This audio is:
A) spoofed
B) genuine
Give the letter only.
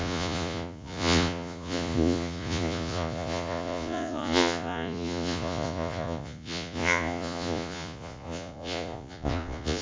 A